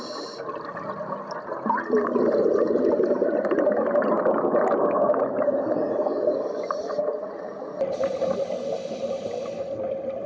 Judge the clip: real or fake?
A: real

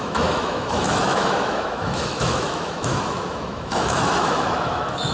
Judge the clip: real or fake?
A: fake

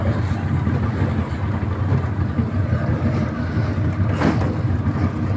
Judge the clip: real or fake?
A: real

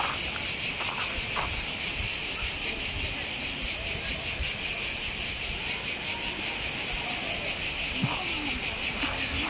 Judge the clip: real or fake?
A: real